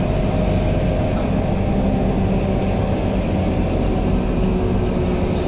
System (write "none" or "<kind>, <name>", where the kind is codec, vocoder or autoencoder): none